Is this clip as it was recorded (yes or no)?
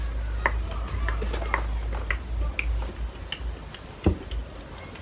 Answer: yes